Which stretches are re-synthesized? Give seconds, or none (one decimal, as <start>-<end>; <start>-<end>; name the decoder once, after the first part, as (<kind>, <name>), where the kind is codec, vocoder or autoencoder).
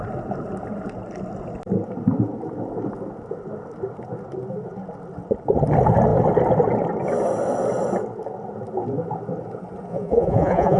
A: 9.9-10.8 (vocoder, Vocos)